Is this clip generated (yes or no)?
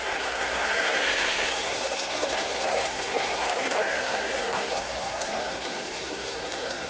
yes